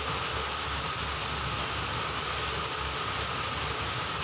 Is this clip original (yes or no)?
yes